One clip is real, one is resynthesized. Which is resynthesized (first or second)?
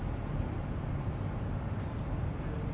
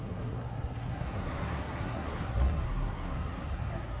second